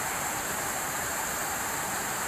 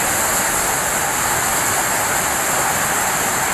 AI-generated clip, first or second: first